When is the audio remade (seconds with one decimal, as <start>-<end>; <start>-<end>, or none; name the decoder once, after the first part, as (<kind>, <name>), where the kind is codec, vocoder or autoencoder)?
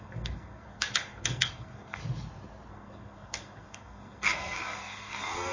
0.0-2.0 (codec, SNAC); 2.7-5.5